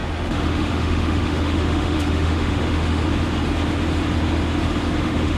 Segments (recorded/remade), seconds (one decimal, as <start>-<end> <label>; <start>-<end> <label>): 0.0-3.0 remade; 3.0-5.0 recorded; 5.0-5.4 remade

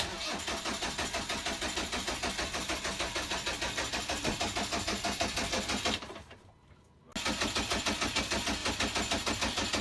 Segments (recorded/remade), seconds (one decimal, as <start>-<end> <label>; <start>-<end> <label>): 0.0-9.8 recorded